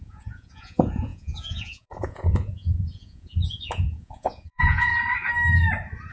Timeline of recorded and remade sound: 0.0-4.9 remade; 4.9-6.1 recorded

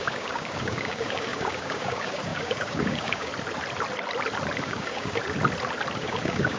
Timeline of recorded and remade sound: 0.0-3.3 remade; 3.3-4.6 recorded; 4.6-5.2 remade; 5.2-6.0 recorded; 6.0-6.6 remade

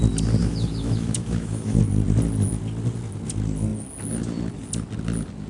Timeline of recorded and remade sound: 0.0-0.4 recorded; 0.4-1.8 remade; 1.8-5.5 recorded

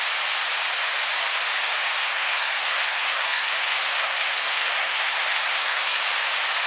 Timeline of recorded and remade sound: 0.0-2.0 recorded; 2.0-6.0 remade; 6.0-6.7 recorded